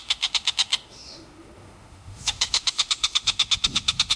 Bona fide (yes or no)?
no